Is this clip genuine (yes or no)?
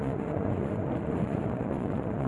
no